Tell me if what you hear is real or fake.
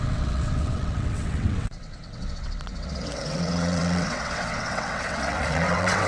fake